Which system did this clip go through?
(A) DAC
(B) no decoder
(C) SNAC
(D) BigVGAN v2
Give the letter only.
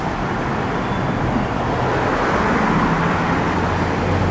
B